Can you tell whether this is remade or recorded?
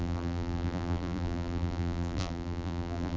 remade